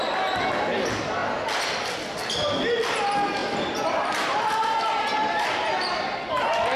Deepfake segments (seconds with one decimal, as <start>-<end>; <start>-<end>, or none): 3.4-6.2